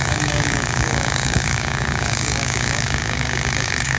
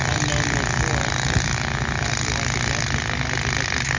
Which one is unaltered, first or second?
second